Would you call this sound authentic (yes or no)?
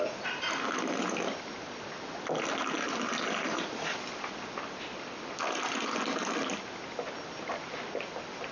yes